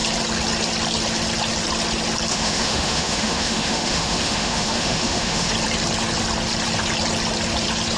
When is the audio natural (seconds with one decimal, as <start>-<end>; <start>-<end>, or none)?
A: 0.0-2.3; 5.5-8.0

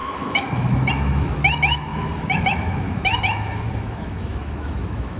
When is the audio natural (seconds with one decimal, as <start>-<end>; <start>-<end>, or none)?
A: none

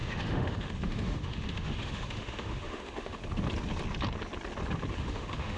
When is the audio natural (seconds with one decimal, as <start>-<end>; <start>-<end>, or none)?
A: 3.2-5.0

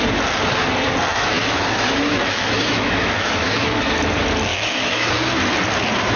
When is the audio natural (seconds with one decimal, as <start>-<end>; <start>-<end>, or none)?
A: 0.0-1.1; 3.8-4.5; 5.1-6.2